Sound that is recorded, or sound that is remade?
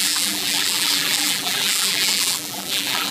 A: remade